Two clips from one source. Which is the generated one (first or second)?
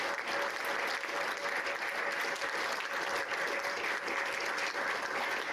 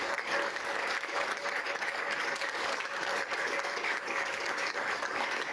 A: second